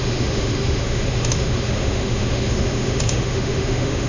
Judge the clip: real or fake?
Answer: fake